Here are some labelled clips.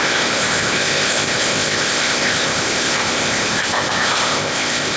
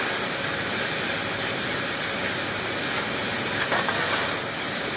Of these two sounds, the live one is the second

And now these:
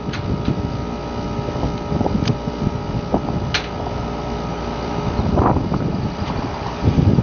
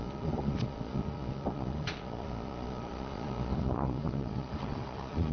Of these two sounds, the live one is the first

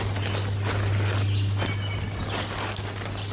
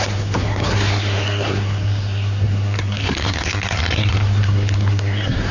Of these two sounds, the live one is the first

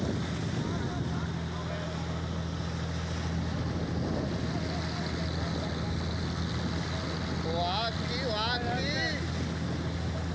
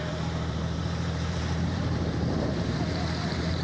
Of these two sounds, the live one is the first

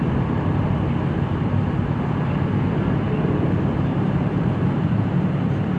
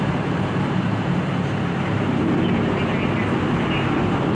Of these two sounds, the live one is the second